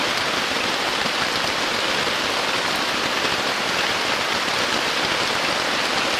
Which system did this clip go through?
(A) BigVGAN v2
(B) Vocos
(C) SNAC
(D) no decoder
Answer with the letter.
D